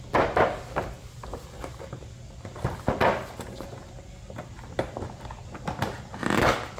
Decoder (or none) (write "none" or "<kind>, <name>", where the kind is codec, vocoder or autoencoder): none